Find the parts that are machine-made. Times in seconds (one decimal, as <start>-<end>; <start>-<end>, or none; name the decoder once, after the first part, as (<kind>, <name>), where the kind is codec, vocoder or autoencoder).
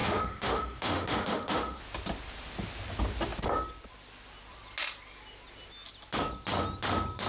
0.0-1.8 (autoencoder, DAC-VAE)